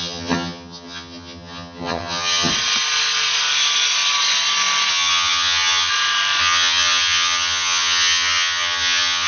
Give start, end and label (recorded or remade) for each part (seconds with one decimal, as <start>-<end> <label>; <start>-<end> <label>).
0.0-2.5 remade; 2.5-4.9 recorded; 4.9-5.9 remade; 5.9-6.4 recorded; 6.4-9.3 remade